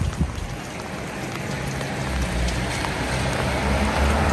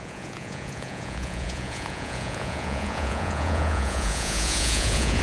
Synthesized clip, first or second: second